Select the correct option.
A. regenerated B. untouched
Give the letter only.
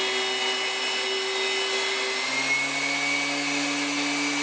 B